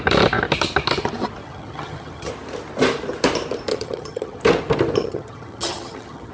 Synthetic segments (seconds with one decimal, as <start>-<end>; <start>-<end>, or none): 1.4-2.3; 3.7-4.4; 5.0-6.3

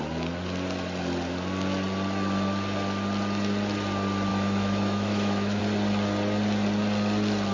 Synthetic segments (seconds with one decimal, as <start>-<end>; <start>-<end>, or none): 4.3-5.6

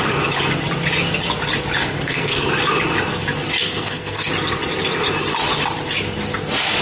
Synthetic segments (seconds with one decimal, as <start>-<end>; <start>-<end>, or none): 1.8-2.5; 3.6-4.3

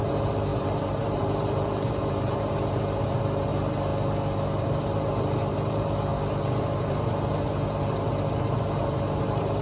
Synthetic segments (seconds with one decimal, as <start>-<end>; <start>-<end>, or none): 0.0-3.9; 4.6-6.1; 6.6-9.6

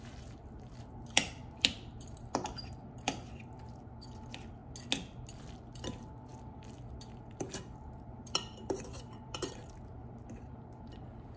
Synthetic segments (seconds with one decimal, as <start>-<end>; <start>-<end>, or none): 0.0-4.6; 5.4-10.0

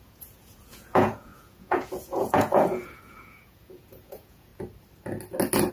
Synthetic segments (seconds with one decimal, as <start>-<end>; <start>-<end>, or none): 0.0-4.5

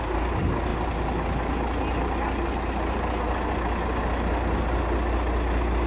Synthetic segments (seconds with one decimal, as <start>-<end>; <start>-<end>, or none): none

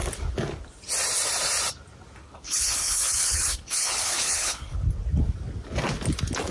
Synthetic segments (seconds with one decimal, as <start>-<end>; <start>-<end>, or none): 2.2-4.9